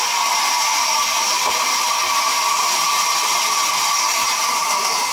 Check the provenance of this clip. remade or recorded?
recorded